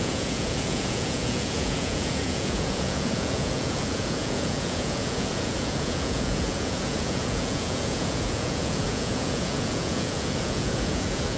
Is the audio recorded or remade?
remade